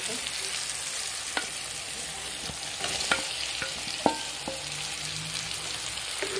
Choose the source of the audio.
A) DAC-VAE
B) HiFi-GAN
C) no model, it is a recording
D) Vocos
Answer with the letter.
C